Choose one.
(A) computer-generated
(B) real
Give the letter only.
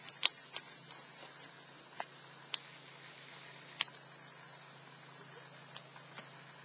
B